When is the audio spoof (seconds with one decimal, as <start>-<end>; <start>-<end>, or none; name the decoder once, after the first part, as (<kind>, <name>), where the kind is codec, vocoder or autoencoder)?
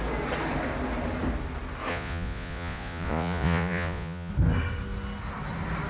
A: 1.9-4.3 (vocoder, Vocos)